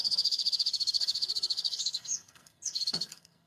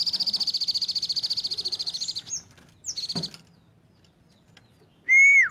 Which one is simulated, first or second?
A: first